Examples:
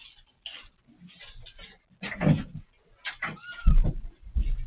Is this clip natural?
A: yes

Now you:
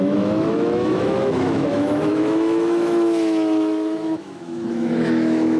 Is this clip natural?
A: no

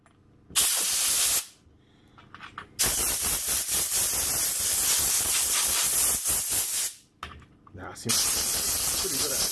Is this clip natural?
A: yes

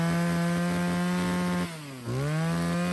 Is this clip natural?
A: yes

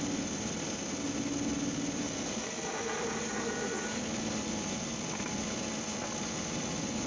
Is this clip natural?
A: yes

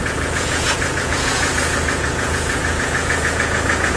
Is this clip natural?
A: no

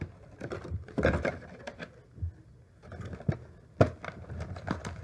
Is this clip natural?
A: yes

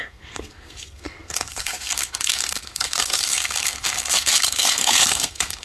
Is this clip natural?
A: no